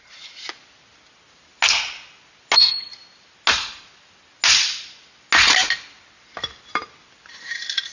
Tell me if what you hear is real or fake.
real